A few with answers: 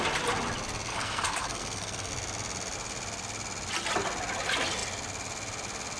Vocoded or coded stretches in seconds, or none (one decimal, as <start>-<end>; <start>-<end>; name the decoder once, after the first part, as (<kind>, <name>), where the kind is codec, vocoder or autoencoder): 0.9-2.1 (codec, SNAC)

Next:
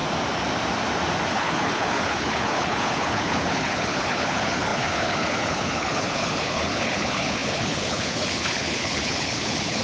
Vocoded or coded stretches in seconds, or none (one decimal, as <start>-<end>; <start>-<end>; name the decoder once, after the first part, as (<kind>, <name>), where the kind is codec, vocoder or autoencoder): 1.3-9.8 (codec, HILCodec)

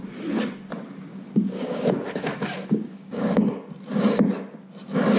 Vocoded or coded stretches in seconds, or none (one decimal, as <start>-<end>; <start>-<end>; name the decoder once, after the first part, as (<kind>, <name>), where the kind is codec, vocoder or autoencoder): 1.1-3.5 (codec, DAC)